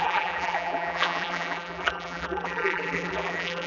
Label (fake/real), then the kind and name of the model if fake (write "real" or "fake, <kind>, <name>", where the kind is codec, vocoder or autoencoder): fake, vocoder, BigVGAN v2